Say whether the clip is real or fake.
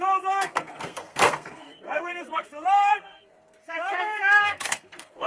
fake